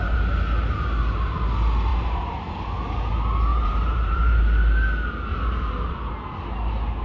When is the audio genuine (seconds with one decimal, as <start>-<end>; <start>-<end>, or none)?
0.0-1.9; 2.5-3.5; 4.4-5.3; 6.1-7.0